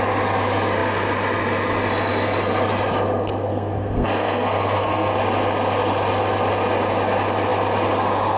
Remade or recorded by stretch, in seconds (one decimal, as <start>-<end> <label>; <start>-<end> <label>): 0.0-3.5 recorded; 3.5-5.1 remade; 5.1-8.4 recorded